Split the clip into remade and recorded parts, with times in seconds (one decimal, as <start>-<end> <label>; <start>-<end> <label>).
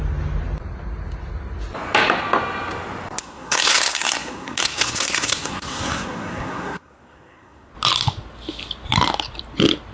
0.0-3.2 recorded; 3.2-7.7 remade; 7.7-9.9 recorded